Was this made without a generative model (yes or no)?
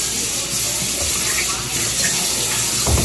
yes